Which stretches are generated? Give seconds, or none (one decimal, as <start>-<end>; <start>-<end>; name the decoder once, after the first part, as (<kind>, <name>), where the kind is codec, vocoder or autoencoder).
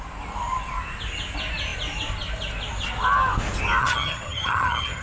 3.8-5.0 (vocoder, HiFi-GAN)